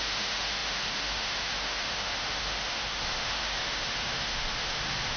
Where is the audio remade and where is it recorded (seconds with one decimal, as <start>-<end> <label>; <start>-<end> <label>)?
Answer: 0.0-5.2 remade